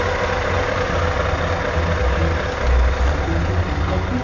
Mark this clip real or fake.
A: real